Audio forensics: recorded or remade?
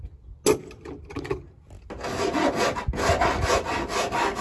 recorded